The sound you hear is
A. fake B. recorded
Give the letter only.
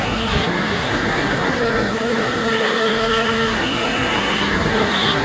A